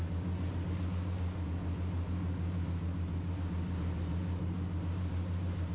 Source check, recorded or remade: recorded